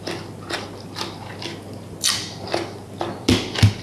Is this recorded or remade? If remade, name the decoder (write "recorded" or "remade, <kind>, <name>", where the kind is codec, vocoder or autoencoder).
recorded